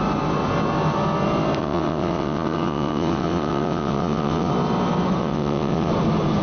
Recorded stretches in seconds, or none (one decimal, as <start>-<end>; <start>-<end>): 0.0-1.6; 4.5-5.2; 5.9-6.4